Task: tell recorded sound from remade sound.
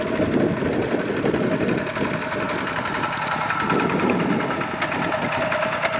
recorded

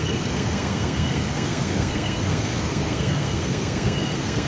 remade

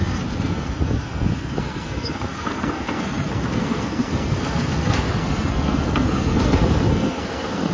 remade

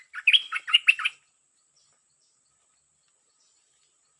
recorded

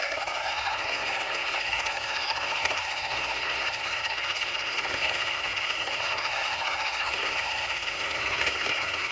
remade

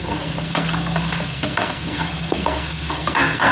remade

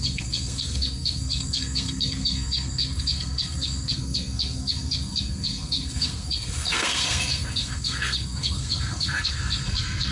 remade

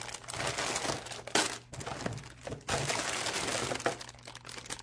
recorded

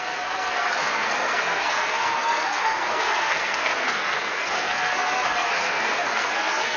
remade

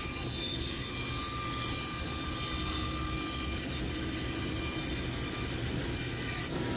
recorded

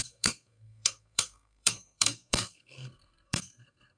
remade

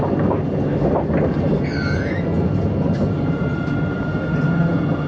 recorded